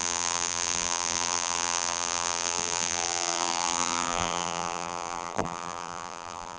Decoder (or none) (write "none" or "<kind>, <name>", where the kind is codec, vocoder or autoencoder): vocoder, BigVGAN v2